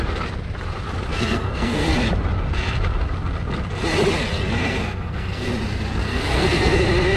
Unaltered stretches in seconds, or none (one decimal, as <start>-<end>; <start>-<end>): 0.0-1.1; 1.9-4.6; 5.5-6.0; 6.8-7.2